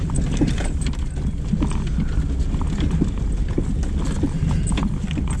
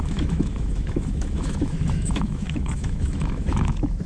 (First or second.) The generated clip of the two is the second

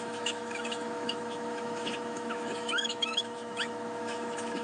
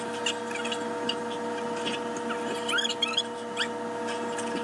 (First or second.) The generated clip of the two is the first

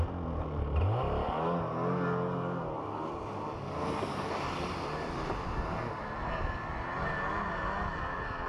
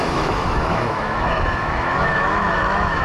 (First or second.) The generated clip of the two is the second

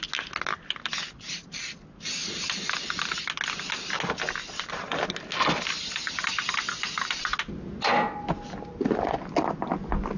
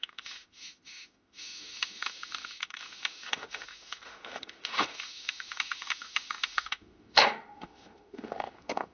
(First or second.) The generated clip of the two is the second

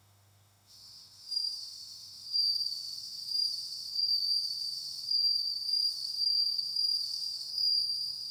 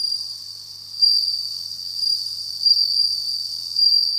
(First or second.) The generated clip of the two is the first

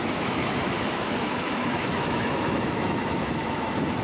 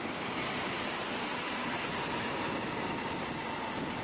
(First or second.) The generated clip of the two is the first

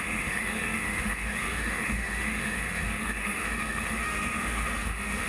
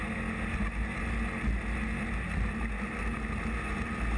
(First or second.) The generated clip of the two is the first